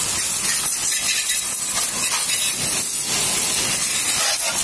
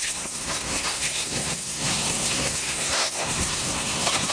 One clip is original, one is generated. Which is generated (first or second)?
second